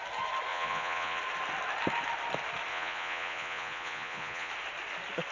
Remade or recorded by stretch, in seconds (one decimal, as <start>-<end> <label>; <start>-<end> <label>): 0.0-0.5 recorded; 0.5-1.2 remade; 1.2-2.7 recorded; 2.7-4.5 remade; 4.5-5.3 recorded